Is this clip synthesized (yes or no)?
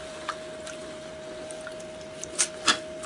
no